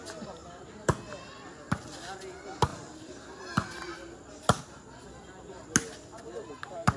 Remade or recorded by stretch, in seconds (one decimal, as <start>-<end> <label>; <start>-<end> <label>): 0.0-7.0 recorded